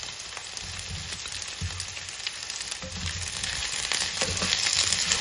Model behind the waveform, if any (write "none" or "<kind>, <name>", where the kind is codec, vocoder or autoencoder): none